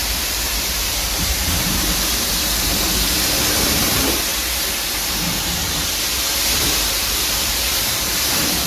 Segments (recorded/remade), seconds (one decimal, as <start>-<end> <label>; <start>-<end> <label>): 0.0-4.3 remade; 4.3-6.6 recorded; 6.6-8.7 remade